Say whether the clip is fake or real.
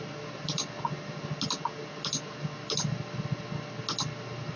real